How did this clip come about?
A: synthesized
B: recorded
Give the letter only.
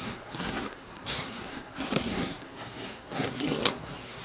A